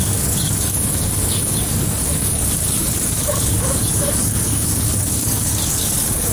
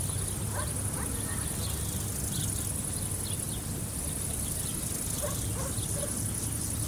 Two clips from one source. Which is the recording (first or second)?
second